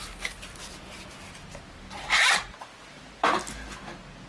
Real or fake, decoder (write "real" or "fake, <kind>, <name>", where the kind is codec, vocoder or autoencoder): real